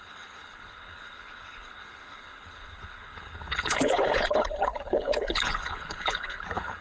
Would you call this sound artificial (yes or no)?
yes